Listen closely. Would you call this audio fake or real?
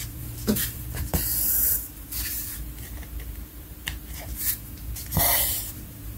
fake